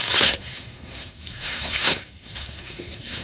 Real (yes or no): no